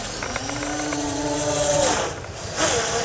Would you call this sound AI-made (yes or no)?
no